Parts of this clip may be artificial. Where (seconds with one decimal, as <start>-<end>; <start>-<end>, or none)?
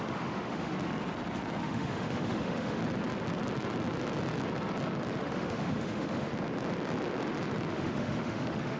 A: 0.0-0.7; 1.6-2.8; 5.2-6.3; 7.7-8.8